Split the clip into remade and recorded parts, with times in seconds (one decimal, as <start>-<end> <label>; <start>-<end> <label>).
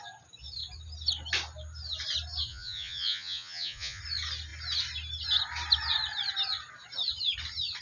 0.0-2.5 recorded; 2.5-4.0 remade; 4.0-7.8 recorded